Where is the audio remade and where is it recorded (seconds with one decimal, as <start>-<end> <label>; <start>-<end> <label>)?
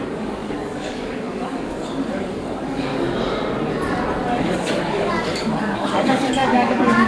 0.0-2.9 remade; 2.9-4.4 recorded; 4.4-7.1 remade